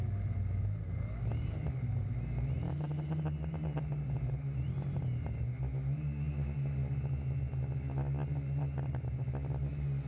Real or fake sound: real